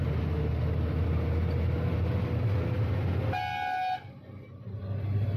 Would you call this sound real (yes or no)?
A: yes